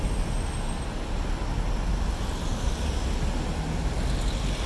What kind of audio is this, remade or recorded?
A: recorded